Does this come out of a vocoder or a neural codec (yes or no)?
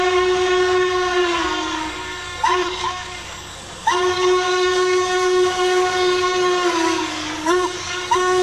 yes